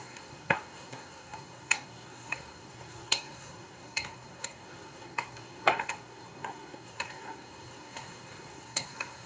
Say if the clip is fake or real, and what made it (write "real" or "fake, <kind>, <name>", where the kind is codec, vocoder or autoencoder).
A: fake, codec, SNAC